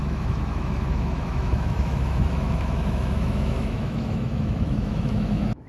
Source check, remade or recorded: remade